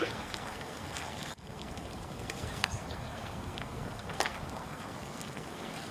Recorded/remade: remade